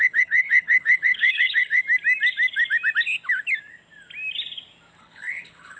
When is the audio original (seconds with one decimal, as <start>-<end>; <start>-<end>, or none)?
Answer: 1.8-5.0